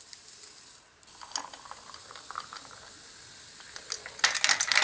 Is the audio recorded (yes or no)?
yes